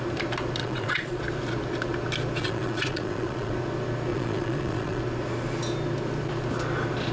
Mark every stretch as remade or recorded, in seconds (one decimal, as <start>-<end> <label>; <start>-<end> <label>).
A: 0.0-0.6 recorded; 0.6-1.2 remade; 1.2-2.4 recorded; 2.4-3.5 remade; 3.5-4.1 recorded; 4.1-5.0 remade; 5.0-7.1 recorded